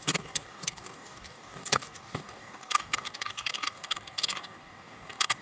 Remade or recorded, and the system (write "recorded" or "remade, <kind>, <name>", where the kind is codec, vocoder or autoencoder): remade, codec, DAC